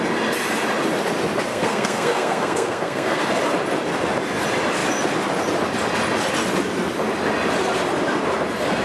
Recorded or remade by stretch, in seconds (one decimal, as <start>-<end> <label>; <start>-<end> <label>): 0.0-1.5 recorded; 1.5-3.3 remade; 3.3-8.8 recorded